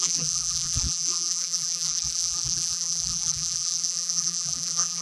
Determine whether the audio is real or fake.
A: fake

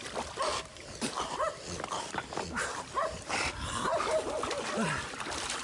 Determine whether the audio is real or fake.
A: fake